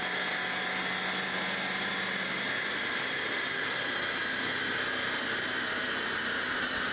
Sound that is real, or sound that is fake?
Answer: real